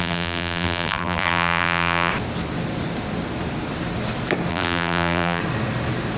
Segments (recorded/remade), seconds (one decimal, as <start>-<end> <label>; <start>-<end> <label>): 0.0-2.1 remade; 2.1-4.5 recorded; 4.5-5.4 remade; 5.4-6.2 recorded